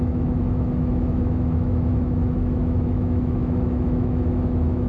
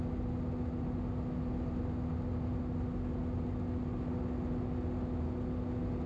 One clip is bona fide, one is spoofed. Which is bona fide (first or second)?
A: second